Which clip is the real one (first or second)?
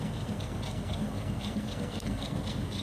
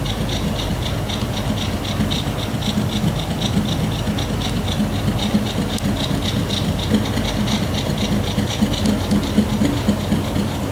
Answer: second